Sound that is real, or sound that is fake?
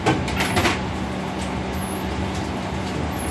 real